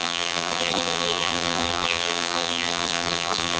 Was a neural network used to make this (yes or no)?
yes